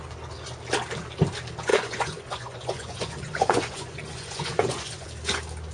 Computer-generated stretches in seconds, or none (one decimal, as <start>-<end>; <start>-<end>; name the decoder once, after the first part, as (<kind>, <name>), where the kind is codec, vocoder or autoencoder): 1.7-5.1 (vocoder, Vocos)